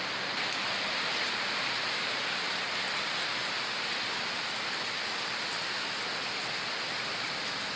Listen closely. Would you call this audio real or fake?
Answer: real